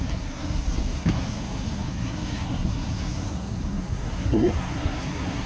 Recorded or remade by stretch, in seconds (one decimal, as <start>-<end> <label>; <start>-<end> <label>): 0.0-5.5 remade